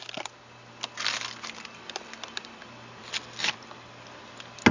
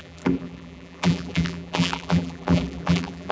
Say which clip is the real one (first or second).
first